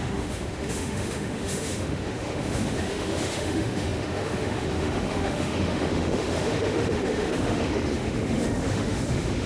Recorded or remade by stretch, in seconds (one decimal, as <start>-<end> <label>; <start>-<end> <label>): 0.0-9.5 remade